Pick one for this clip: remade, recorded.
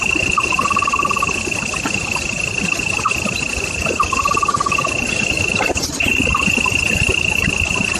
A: remade